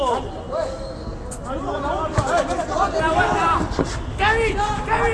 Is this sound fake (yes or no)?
no